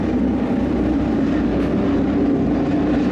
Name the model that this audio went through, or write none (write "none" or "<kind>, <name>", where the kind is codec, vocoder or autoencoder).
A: vocoder, BigVGAN v2